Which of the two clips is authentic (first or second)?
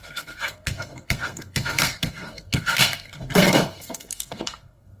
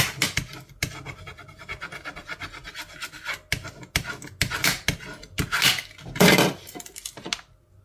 second